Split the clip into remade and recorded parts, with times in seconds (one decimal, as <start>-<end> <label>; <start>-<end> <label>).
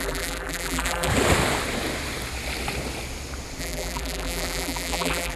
0.0-1.1 remade; 1.1-3.6 recorded; 3.6-5.4 remade